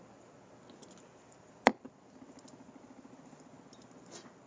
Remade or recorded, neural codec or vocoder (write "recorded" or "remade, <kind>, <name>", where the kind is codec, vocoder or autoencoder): recorded